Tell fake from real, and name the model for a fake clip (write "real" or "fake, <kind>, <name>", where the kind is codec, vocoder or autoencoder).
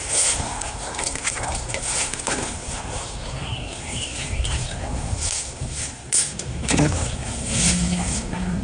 fake, codec, SNAC